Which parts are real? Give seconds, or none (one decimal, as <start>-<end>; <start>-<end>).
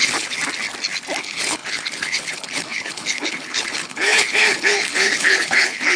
0.4-1.2